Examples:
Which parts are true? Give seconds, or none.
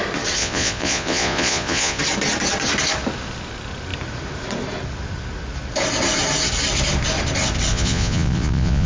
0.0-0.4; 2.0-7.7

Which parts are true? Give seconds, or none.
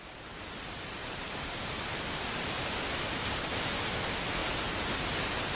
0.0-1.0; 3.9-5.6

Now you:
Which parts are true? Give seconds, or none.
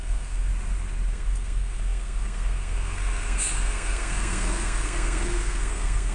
0.5-1.1